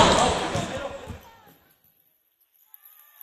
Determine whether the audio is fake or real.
real